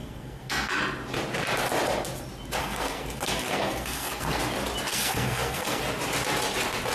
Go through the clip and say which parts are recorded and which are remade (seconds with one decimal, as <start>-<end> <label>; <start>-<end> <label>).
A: 0.0-0.8 remade; 0.8-2.6 recorded; 2.6-4.4 remade; 4.4-4.9 recorded; 4.9-5.8 remade; 5.8-6.9 recorded

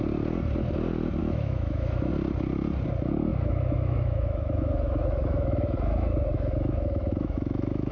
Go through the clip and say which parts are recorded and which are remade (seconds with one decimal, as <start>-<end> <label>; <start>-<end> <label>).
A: 0.0-1.2 recorded; 1.2-2.1 remade; 2.1-3.3 recorded; 3.3-7.9 remade